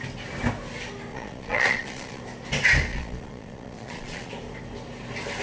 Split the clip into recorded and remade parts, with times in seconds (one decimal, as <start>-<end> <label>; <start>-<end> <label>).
0.0-1.1 recorded; 1.1-2.2 remade; 2.2-2.9 recorded; 2.9-4.3 remade; 4.3-5.4 recorded